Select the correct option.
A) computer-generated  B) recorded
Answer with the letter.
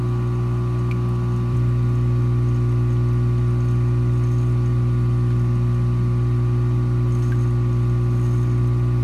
B